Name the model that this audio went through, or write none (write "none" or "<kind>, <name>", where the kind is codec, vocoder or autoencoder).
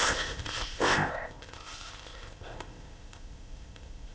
codec, ZipCodec